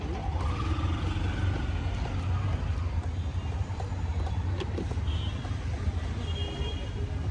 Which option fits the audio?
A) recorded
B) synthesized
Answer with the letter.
A